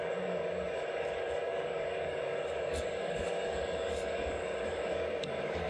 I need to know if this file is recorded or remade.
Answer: remade